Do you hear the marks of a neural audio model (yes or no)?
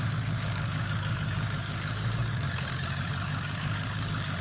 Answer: yes